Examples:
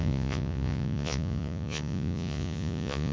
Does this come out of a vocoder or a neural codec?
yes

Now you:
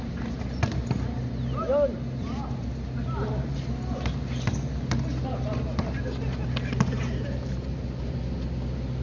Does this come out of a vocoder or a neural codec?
no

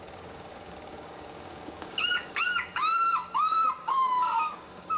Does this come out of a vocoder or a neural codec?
yes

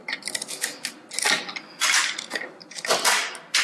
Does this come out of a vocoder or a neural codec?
no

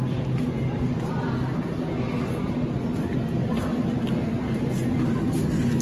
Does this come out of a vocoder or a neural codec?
no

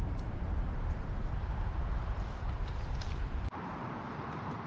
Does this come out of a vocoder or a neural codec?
yes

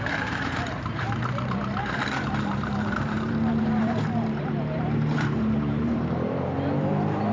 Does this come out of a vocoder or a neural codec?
yes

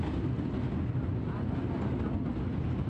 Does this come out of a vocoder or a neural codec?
no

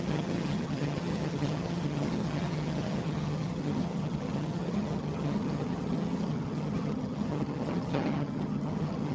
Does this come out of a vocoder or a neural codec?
yes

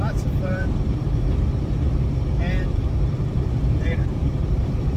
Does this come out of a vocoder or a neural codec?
yes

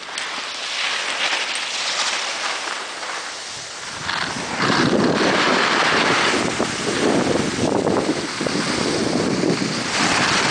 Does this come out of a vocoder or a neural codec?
no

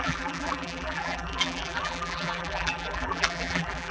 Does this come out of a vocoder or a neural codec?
yes